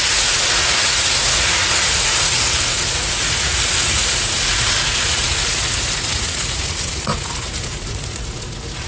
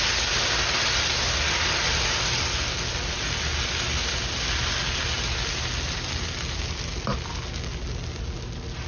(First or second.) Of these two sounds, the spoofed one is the first